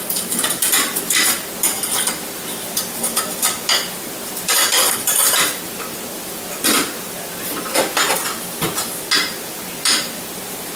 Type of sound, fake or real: fake